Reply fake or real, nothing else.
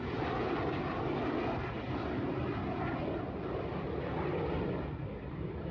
real